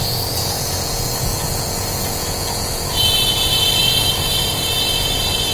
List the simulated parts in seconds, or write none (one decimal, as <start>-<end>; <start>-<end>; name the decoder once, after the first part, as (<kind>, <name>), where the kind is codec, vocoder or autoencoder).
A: 0.0-5.5 (vocoder, Vocos)